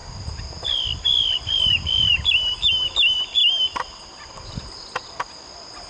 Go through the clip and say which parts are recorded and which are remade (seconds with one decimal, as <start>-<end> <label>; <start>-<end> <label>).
0.0-5.9 recorded